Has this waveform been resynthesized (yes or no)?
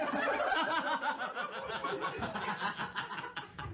no